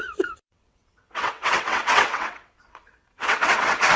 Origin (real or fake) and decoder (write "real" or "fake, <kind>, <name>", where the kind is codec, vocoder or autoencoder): fake, vocoder, WaveNeXt